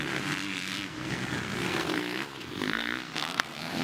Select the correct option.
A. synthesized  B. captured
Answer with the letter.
A